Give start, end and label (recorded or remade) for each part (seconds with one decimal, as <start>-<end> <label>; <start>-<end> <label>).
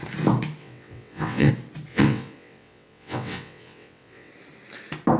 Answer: 0.0-0.6 recorded; 0.6-1.5 remade; 1.5-1.9 recorded; 1.9-4.3 remade; 4.3-5.2 recorded